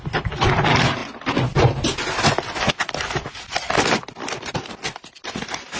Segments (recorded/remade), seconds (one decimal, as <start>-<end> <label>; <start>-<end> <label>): 0.0-5.8 remade